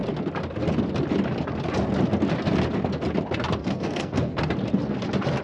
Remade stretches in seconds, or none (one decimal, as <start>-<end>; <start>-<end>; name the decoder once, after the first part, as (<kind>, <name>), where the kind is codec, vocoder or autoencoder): 3.6-4.4 (codec, SNAC)